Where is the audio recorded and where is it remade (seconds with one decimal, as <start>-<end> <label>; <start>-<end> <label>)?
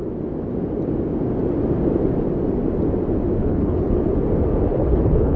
0.0-3.4 recorded; 3.4-4.0 remade; 4.0-4.7 recorded; 4.7-5.4 remade